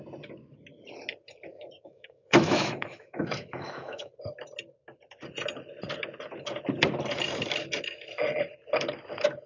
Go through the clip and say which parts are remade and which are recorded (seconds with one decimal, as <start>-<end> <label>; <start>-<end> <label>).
0.0-1.5 recorded; 1.5-4.1 remade; 4.1-9.5 recorded